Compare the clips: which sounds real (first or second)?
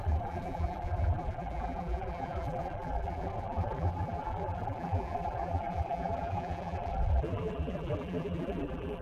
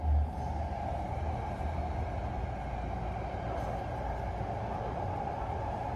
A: second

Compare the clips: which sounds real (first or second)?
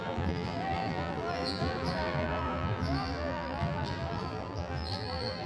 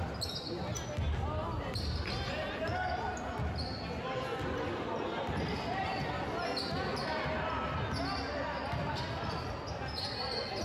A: second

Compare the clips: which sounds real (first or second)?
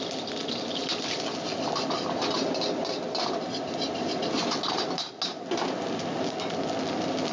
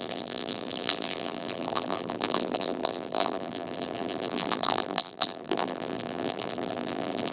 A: first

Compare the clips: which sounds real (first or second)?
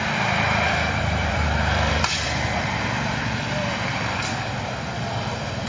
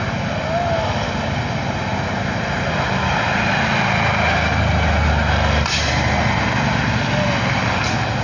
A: second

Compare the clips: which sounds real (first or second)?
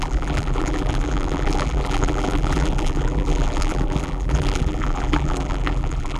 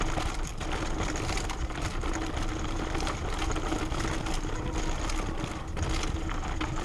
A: second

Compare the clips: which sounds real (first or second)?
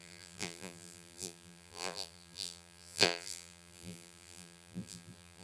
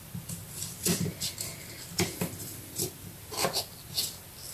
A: second